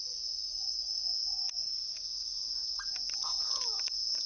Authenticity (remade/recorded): remade